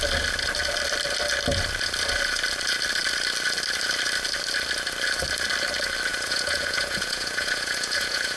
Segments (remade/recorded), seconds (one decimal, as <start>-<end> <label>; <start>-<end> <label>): 0.0-6.1 recorded; 6.1-8.4 remade